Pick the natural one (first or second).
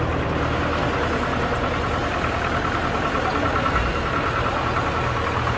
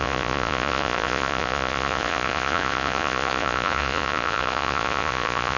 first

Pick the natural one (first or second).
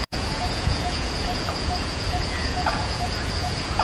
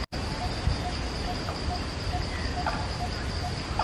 second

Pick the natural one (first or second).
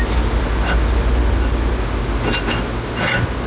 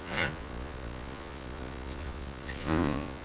first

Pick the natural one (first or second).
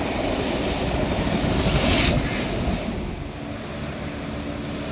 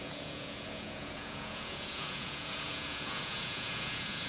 first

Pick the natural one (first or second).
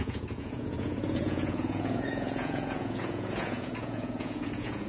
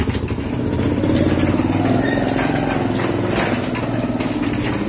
second